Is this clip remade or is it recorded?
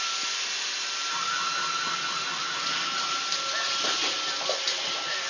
recorded